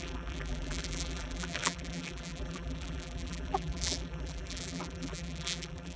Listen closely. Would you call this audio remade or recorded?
remade